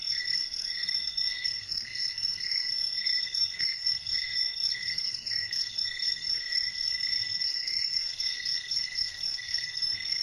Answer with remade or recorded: remade